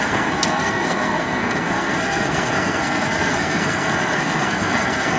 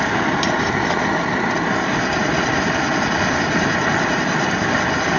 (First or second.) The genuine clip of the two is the second